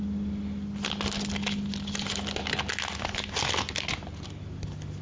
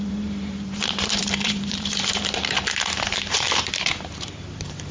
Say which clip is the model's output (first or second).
second